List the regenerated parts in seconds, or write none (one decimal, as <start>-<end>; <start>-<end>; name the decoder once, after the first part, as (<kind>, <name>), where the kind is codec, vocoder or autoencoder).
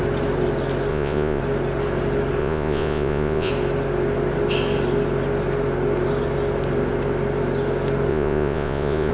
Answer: 0.9-1.4 (vocoder, Vocos); 2.4-3.5; 8.1-9.1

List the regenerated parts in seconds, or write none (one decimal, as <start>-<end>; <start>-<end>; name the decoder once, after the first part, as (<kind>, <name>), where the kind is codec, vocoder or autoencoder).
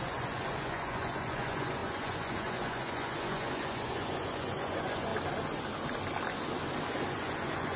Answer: 0.0-5.1 (vocoder, Vocos); 7.1-7.8